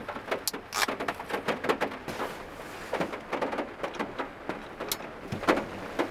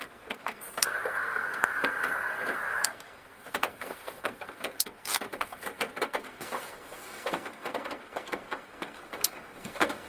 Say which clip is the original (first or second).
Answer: first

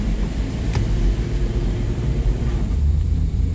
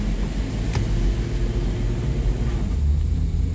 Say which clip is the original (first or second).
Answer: second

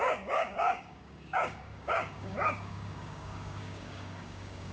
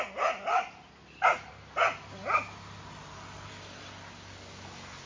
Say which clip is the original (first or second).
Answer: second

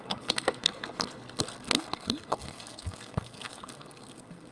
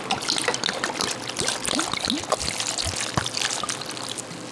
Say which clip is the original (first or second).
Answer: second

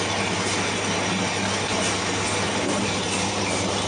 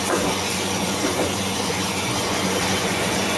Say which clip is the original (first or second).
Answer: first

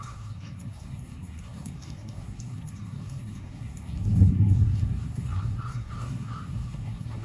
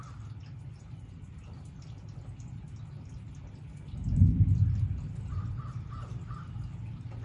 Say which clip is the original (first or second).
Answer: second